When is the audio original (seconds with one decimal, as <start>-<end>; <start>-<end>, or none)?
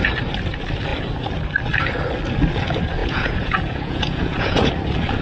0.0-3.0; 4.7-5.2